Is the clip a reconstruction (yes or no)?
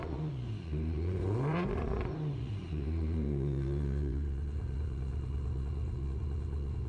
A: yes